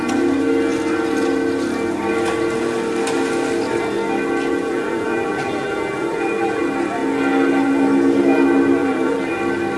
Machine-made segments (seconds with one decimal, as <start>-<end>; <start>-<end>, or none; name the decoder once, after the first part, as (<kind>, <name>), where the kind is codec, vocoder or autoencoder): 4.5-6.6 (vocoder, BigVGAN v2); 8.8-9.3